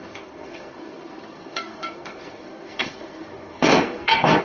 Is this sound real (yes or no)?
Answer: no